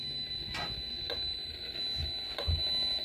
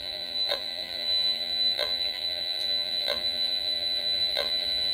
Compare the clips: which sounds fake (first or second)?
second